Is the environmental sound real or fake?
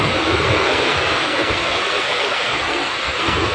fake